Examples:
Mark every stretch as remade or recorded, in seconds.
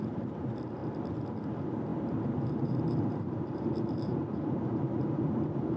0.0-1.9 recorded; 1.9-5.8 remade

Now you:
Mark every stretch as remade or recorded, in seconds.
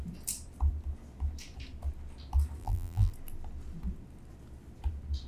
0.0-2.6 recorded; 2.6-3.1 remade; 3.1-5.3 recorded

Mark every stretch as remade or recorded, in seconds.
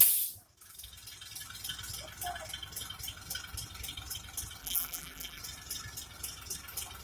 0.0-4.6 recorded; 4.6-5.4 remade; 5.4-7.0 recorded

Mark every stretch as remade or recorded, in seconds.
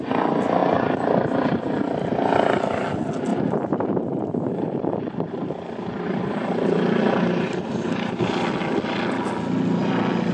0.0-0.6 recorded; 0.6-1.6 remade; 1.6-3.3 recorded; 3.3-8.2 remade; 8.2-10.3 recorded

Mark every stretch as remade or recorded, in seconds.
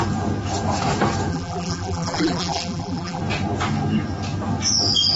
0.0-1.3 recorded; 1.3-3.2 remade; 3.2-5.2 recorded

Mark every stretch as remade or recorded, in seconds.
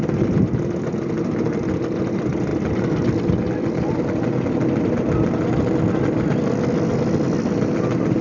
0.0-8.2 recorded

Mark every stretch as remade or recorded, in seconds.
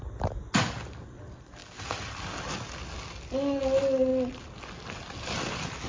0.0-5.9 recorded